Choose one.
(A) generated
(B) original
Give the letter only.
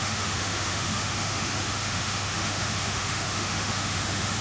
A